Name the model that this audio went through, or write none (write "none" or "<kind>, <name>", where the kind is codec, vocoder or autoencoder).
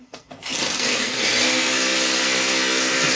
codec, SNAC